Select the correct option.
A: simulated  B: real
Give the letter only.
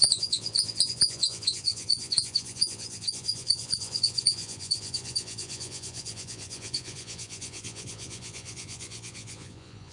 A